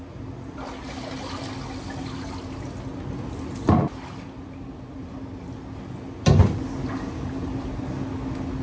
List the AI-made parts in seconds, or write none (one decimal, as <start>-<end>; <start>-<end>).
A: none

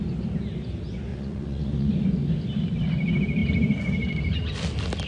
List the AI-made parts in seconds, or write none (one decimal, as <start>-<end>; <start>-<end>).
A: 1.1-1.9

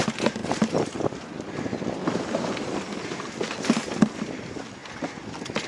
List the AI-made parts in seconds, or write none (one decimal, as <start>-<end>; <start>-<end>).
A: 0.0-5.7

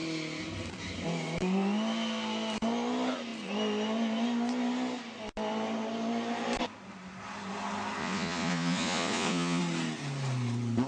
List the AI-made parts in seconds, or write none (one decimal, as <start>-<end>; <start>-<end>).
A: 8.0-9.6

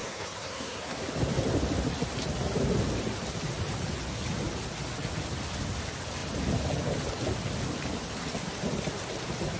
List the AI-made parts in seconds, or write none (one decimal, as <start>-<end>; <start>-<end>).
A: 0.0-1.0

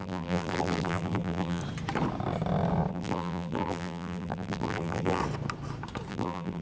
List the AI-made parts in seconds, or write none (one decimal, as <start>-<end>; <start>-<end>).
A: 0.0-1.6; 2.9-5.2; 6.1-6.6

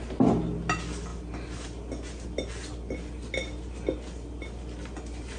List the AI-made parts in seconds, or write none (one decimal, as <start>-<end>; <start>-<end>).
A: none